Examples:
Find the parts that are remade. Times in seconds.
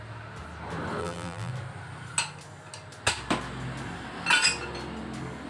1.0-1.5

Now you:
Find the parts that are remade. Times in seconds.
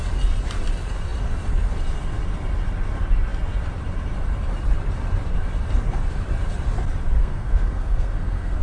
7.2-8.6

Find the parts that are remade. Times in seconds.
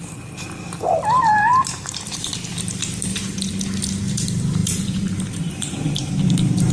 0.0-3.1; 4.1-6.7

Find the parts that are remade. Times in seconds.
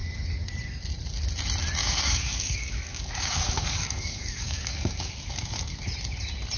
1.8-5.8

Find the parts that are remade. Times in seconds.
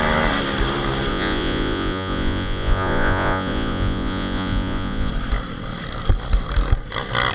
1.1-5.1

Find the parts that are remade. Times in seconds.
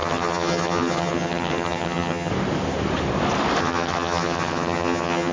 0.0-2.3; 3.6-5.3